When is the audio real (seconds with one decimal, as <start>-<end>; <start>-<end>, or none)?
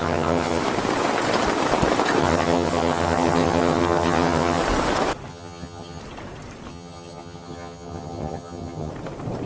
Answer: 0.6-2.2; 4.6-5.3; 6.0-6.7; 8.9-9.5